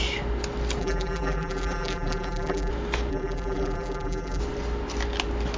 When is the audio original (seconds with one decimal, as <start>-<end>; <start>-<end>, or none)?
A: 0.0-0.8; 2.7-3.1; 4.4-5.6